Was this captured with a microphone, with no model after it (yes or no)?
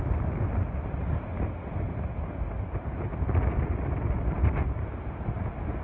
yes